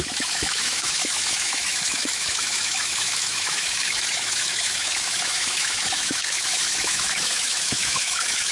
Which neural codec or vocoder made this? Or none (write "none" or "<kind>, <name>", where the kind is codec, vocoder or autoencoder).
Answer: autoencoder, DAC-VAE